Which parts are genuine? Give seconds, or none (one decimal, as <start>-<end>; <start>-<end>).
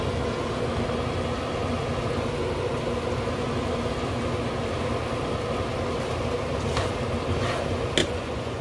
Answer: 0.0-8.0